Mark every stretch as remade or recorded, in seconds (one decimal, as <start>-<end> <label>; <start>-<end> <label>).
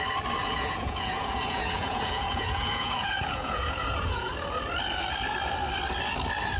0.0-0.4 recorded; 0.4-4.3 remade; 4.3-6.6 recorded